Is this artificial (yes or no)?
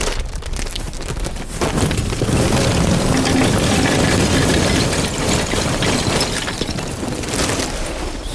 no